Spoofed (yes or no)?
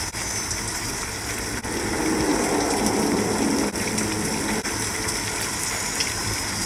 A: no